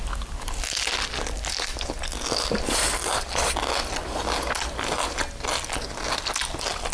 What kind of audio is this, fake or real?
real